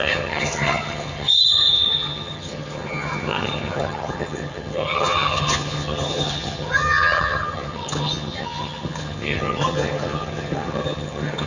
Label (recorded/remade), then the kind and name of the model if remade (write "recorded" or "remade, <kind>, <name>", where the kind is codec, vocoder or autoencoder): remade, vocoder, HiFi-GAN